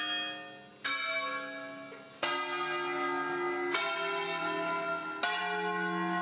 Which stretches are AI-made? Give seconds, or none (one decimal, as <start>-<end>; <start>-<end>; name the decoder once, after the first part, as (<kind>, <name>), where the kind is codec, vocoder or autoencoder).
none